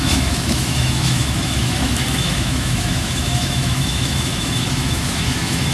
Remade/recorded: remade